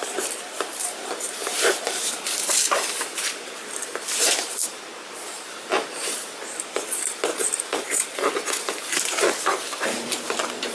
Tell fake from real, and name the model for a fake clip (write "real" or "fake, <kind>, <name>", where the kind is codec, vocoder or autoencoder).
fake, vocoder, BigVGAN v2